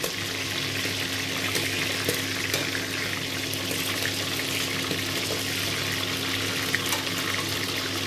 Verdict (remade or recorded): recorded